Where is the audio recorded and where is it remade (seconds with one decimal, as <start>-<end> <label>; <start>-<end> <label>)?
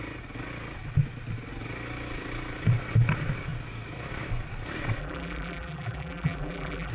0.0-5.0 recorded; 5.0-6.9 remade